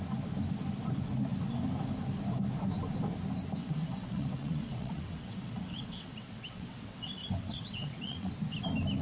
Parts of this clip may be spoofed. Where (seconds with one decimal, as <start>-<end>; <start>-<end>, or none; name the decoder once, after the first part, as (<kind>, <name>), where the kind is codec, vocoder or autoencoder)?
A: 3.6-8.3 (vocoder, WaveNeXt)